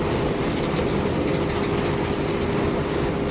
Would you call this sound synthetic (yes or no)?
no